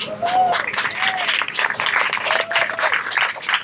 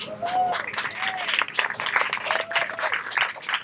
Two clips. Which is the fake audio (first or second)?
first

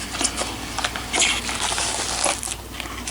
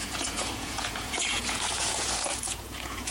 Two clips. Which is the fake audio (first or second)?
second